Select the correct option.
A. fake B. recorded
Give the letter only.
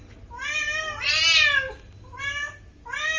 B